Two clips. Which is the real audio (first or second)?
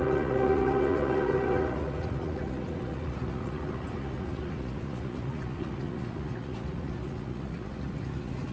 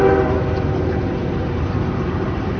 second